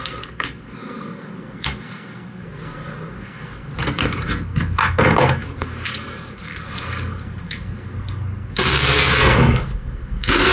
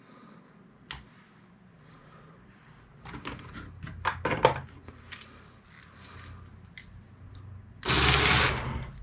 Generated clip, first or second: first